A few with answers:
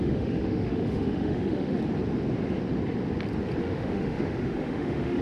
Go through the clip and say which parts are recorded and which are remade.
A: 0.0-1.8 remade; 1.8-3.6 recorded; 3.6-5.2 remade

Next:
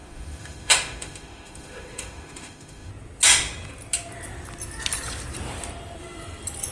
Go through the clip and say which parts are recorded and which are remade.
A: 0.0-2.9 remade; 2.9-6.7 recorded

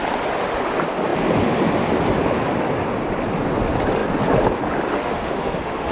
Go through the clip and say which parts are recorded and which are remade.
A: 0.0-4.9 recorded; 4.9-5.9 remade

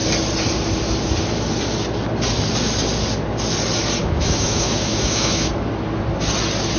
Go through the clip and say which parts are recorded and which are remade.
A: 0.0-4.0 recorded; 4.0-5.5 remade; 5.5-6.8 recorded

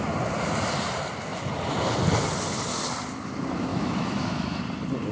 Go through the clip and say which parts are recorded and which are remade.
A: 0.0-3.7 recorded; 3.7-4.6 remade; 4.6-5.1 recorded